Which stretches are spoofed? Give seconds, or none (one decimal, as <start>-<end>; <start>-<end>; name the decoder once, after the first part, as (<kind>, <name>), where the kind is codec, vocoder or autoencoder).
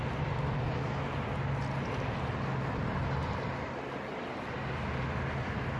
none